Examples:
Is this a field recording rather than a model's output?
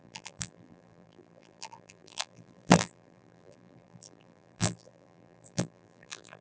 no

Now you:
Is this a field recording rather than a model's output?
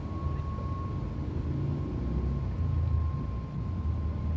yes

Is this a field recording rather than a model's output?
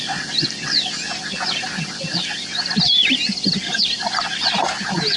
no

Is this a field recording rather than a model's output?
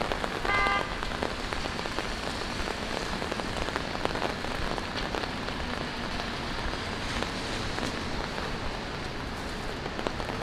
yes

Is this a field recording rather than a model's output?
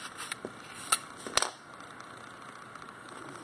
yes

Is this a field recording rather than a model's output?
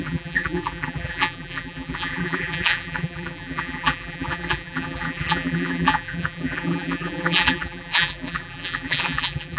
no